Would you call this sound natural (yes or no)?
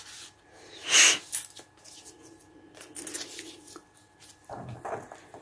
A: yes